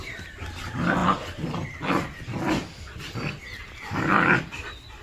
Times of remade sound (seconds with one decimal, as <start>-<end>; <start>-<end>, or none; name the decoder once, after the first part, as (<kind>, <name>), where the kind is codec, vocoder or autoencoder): 1.0-1.9 (vocoder, BigVGAN v2)